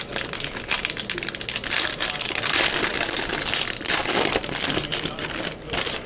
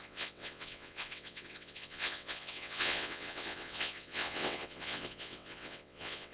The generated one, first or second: second